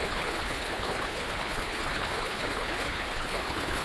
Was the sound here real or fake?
fake